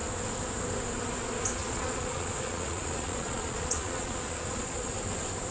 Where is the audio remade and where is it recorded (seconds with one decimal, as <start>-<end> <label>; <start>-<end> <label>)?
0.0-1.6 recorded; 1.6-4.9 remade; 4.9-5.5 recorded